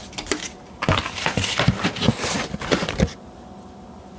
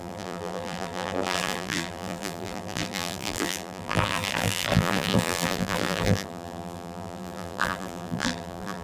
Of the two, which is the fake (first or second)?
second